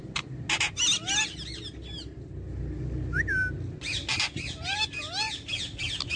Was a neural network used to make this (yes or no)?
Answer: no